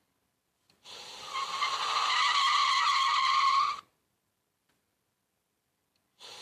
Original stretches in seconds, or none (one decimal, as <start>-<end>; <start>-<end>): 0.0-2.6; 3.3-6.4